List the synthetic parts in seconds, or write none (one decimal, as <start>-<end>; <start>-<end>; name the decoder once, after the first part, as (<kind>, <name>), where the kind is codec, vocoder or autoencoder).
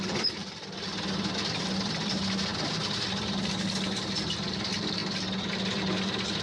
none